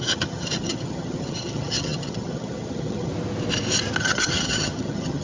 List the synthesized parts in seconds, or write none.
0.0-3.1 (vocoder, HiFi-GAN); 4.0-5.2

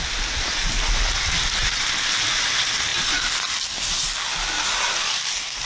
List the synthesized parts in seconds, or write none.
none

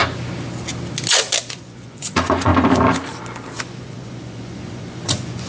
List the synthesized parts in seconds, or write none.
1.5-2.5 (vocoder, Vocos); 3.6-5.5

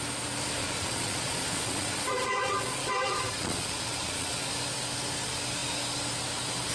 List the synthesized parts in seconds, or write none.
0.6-4.5 (vocoder, Vocos)

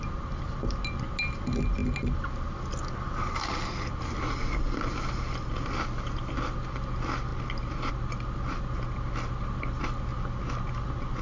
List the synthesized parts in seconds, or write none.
none

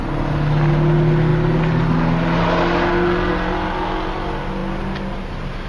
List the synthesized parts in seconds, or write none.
none

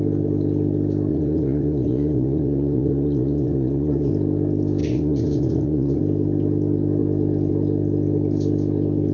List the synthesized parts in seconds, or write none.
1.1-4.1 (vocoder, Vocos); 4.8-6.0